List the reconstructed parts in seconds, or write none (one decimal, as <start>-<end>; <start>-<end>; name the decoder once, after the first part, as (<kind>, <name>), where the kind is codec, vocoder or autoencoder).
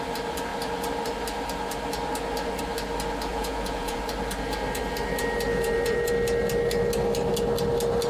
3.3-4.0 (vocoder, Vocos); 5.5-6.1